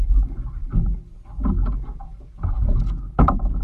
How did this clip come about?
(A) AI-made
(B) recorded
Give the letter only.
B